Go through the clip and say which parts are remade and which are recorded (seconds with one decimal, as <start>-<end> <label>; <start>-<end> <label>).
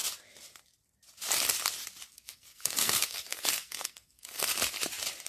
0.0-2.1 recorded; 2.1-4.5 remade; 4.5-5.3 recorded